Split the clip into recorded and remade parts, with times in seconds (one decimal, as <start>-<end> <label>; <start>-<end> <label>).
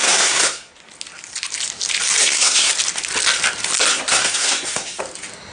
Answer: 0.0-0.7 remade; 0.7-2.2 recorded; 2.2-2.7 remade; 2.7-3.9 recorded; 3.9-5.0 remade; 5.0-5.5 recorded